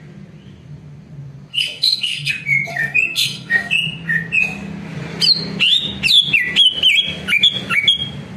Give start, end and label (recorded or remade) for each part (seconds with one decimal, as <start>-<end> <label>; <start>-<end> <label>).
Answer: 0.0-1.5 recorded; 1.5-2.3 remade; 2.3-2.7 recorded; 2.7-3.7 remade; 3.7-8.4 recorded